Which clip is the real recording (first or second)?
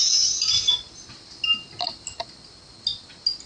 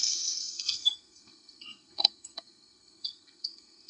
first